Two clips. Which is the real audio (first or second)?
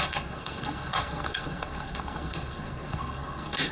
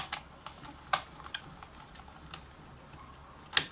second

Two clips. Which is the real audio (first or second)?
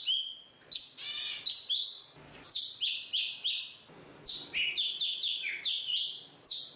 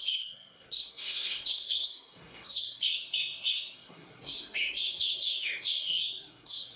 first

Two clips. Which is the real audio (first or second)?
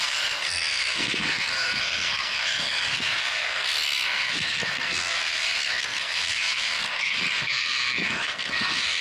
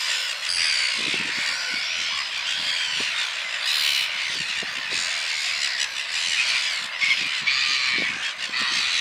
second